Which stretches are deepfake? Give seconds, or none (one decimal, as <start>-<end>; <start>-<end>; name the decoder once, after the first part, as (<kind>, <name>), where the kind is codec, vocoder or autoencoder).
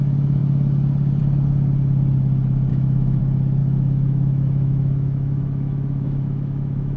2.7-3.2 (autoencoder, DAC-VAE); 3.6-7.0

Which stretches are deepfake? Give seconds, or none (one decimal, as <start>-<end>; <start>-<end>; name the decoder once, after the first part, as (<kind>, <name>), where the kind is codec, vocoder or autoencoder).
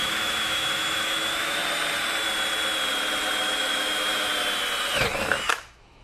0.0-1.6 (autoencoder, DAC-VAE); 3.4-4.3; 5.5-6.0